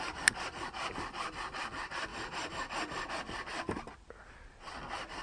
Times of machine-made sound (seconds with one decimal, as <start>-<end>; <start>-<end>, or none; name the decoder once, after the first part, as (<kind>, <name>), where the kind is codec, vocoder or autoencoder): 2.1-3.1 (vocoder, BigVGAN v2)